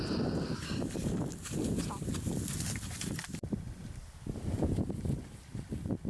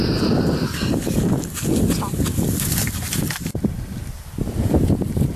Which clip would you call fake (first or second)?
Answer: first